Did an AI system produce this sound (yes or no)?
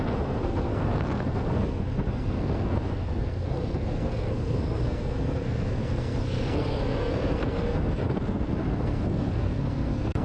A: yes